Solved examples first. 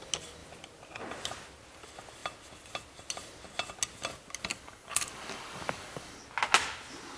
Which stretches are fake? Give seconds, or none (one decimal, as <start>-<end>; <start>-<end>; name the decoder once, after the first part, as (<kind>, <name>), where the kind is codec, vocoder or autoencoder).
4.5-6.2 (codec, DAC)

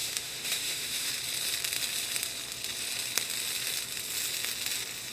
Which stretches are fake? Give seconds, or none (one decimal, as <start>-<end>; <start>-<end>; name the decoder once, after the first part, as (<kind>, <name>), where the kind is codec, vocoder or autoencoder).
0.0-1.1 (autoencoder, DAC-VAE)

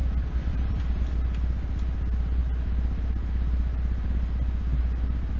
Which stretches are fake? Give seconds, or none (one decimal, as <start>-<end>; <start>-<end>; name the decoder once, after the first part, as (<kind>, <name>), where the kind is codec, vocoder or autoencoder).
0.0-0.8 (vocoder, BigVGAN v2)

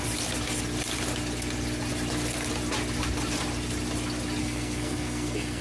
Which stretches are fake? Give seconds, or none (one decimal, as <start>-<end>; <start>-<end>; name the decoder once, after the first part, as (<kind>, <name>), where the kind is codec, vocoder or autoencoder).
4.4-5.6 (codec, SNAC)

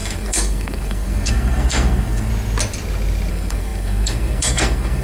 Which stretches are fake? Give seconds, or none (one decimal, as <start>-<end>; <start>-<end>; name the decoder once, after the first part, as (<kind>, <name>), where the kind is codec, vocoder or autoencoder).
0.0-2.3 (codec, SNAC); 3.3-5.0

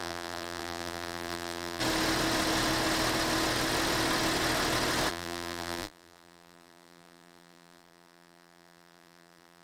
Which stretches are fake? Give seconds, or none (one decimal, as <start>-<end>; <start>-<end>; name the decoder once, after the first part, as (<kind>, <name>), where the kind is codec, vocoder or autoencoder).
0.0-1.8 (vocoder, BigVGAN v2); 5.1-9.6

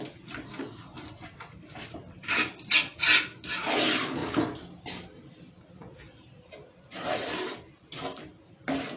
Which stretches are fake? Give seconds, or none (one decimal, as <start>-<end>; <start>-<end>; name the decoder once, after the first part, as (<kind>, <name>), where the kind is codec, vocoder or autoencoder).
none